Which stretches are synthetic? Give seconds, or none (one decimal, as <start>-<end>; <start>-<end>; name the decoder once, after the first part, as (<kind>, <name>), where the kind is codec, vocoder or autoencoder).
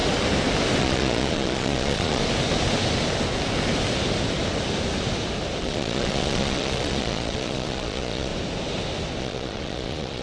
0.8-2.2 (vocoder, Vocos); 5.6-8.3; 9.2-10.2